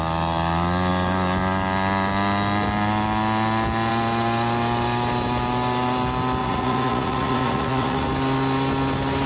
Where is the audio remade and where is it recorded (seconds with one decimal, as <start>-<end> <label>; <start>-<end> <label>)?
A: 0.0-6.4 recorded; 6.4-8.1 remade; 8.1-9.3 recorded